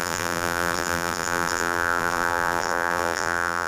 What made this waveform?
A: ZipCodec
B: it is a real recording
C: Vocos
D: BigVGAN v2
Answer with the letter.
D